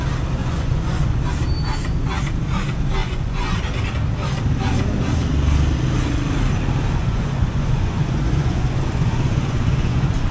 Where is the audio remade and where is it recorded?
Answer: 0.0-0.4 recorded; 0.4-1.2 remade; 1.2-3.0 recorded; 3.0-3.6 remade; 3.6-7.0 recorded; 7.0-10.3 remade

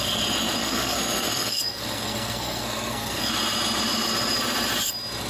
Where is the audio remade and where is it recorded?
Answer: 0.0-0.6 recorded; 0.6-3.3 remade; 3.3-5.3 recorded

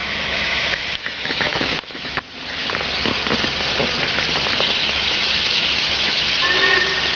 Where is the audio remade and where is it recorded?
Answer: 0.0-2.2 remade; 2.2-4.8 recorded; 4.8-6.3 remade; 6.3-7.1 recorded

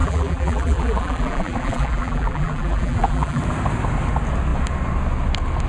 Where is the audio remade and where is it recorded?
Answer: 0.0-3.4 remade; 3.4-5.7 recorded

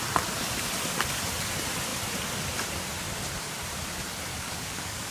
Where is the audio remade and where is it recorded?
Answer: 0.0-4.3 recorded; 4.3-5.1 remade

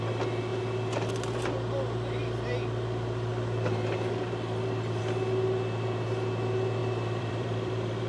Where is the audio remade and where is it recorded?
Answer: 0.0-6.8 recorded; 6.8-8.1 remade